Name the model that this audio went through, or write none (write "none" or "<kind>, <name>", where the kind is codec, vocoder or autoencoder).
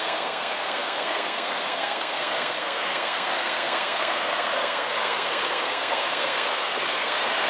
codec, SNAC